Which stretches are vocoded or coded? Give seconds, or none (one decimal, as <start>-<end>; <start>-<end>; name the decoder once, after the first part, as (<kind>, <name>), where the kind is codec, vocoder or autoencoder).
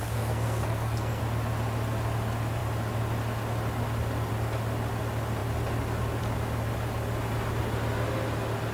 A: 0.0-1.2 (codec, SNAC)